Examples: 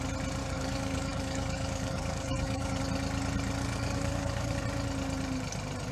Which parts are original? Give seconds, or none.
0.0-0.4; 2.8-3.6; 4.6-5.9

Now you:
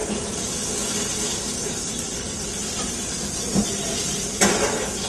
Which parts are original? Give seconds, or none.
0.0-2.6; 4.4-5.1

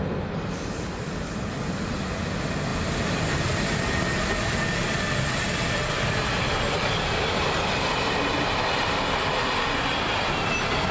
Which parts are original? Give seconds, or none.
0.0-10.9

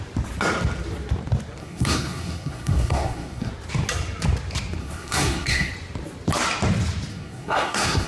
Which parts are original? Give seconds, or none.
0.0-1.6; 3.5-4.8; 5.7-7.1

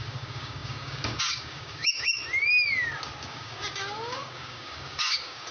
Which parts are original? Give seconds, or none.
2.2-3.2